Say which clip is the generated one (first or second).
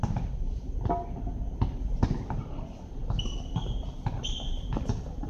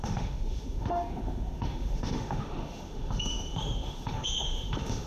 second